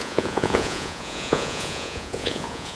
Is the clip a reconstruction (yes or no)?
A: yes